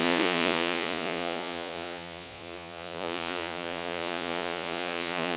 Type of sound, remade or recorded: remade